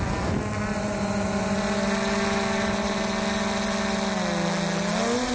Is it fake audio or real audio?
real